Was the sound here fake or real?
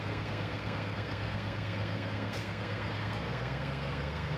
fake